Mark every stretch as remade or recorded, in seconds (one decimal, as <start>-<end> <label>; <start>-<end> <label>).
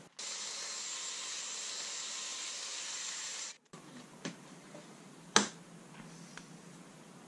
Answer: 0.0-2.3 recorded; 2.3-5.3 remade; 5.3-7.3 recorded